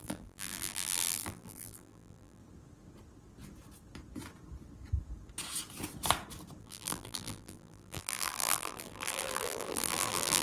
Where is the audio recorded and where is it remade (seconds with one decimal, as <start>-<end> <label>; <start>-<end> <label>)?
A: 0.0-2.4 remade; 2.4-6.6 recorded; 6.6-10.4 remade